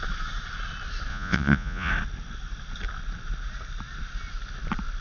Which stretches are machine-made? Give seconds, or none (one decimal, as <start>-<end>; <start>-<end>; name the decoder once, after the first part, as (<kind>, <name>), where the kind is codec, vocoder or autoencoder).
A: 1.1-1.9 (vocoder, Vocos)